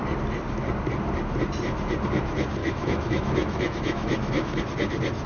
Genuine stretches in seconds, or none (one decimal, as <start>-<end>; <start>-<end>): 0.0-2.6; 4.6-5.3